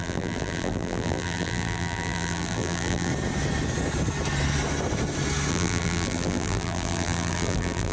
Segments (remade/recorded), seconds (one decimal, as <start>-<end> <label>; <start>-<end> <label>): 0.0-3.1 remade; 3.1-5.5 recorded; 5.5-7.9 remade